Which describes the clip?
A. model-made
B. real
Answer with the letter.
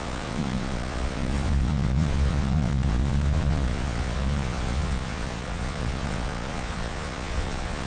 A